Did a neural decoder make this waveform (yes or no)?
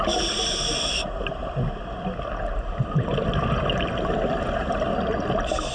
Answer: no